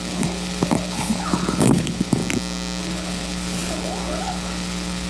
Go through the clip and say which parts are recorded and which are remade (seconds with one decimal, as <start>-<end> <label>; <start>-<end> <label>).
0.0-2.2 remade; 2.2-2.8 recorded; 2.8-5.1 remade

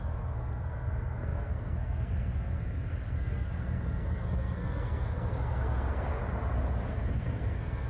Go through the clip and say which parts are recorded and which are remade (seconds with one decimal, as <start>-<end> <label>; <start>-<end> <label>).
0.0-6.2 remade; 6.2-6.9 recorded; 6.9-7.9 remade